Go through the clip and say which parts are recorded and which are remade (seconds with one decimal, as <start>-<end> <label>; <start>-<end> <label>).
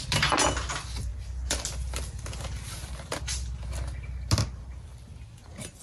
0.0-1.1 remade; 1.1-4.6 recorded; 4.6-5.8 remade